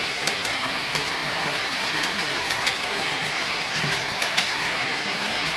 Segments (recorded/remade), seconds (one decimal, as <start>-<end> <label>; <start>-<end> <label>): 0.0-5.6 remade